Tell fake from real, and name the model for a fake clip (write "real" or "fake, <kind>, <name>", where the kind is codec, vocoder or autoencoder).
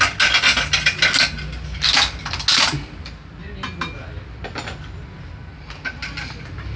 real